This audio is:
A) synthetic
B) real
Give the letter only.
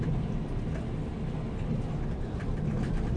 B